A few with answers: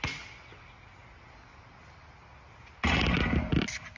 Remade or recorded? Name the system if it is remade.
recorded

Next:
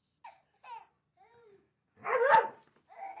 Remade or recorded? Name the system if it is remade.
recorded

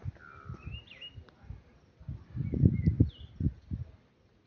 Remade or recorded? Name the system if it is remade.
recorded